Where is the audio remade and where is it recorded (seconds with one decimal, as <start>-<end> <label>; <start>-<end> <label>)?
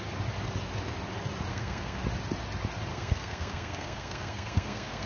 0.0-1.5 recorded; 1.5-2.0 remade; 2.0-2.9 recorded; 2.9-5.1 remade